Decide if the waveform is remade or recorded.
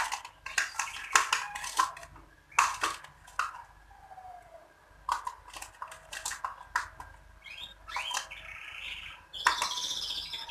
recorded